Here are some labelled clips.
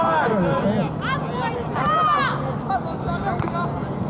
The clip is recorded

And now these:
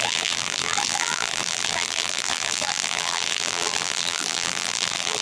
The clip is remade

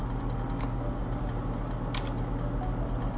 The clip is recorded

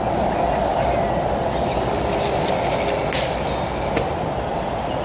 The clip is remade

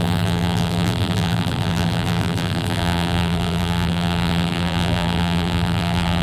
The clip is remade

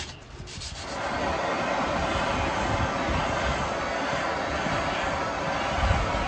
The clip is recorded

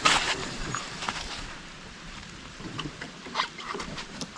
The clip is remade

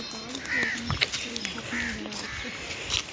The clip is recorded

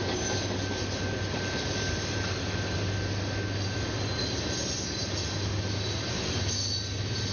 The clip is recorded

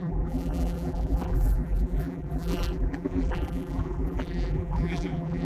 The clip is remade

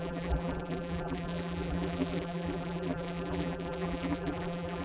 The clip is remade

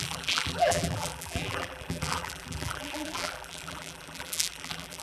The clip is remade